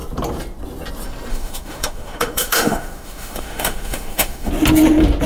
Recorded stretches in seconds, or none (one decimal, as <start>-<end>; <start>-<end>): 0.0-1.3; 4.5-5.3